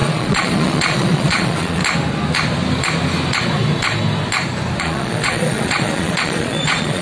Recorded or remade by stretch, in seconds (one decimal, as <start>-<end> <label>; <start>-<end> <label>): 0.0-1.8 remade; 1.8-4.8 recorded; 4.8-7.0 remade

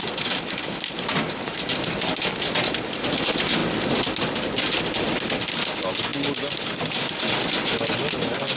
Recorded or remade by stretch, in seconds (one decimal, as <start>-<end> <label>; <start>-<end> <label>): 0.0-8.6 recorded

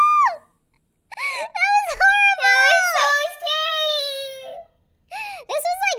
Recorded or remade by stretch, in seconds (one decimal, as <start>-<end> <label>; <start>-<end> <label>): 0.0-3.0 recorded; 3.0-5.1 remade; 5.1-6.0 recorded

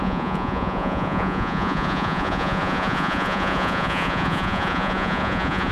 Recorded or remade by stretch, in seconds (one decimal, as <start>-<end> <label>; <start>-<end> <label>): 0.0-5.7 remade

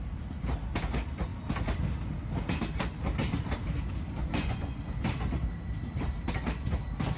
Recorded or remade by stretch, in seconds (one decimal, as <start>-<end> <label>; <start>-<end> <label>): 0.0-4.2 recorded; 4.2-4.8 remade; 4.8-7.2 recorded

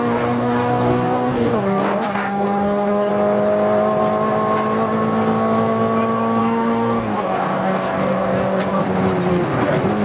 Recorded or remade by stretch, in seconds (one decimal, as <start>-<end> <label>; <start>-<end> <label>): 0.0-3.1 remade; 3.1-6.4 recorded; 6.4-8.8 remade; 8.8-9.3 recorded; 9.3-10.0 remade

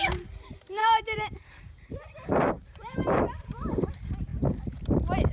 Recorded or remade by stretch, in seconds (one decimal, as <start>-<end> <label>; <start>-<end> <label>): 0.0-0.8 recorded; 0.8-3.9 remade; 3.9-5.3 recorded

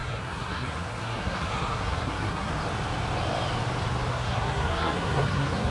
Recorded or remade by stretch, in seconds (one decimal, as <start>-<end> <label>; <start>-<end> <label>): 0.0-2.5 remade; 2.5-4.1 recorded; 4.1-5.7 remade